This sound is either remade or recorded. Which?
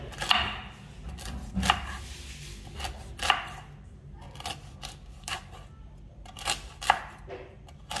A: recorded